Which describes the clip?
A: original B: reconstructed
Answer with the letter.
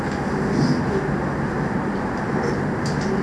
A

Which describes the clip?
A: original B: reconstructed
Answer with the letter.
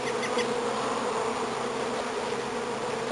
A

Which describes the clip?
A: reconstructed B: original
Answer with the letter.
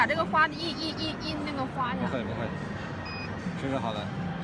B